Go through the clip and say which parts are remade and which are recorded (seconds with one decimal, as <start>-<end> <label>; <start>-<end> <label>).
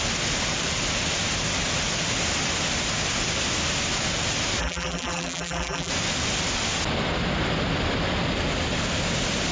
0.0-4.6 recorded; 4.6-5.9 remade; 5.9-9.5 recorded